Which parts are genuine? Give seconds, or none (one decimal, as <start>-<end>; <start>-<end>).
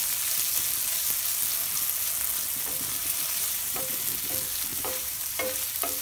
0.0-3.0; 3.9-4.7; 5.6-6.0